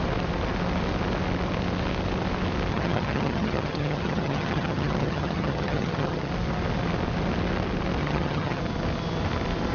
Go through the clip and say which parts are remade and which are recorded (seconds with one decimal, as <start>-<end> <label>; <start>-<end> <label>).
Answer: 0.0-2.7 recorded; 2.7-6.3 remade; 6.3-8.0 recorded; 8.0-8.6 remade; 8.6-9.7 recorded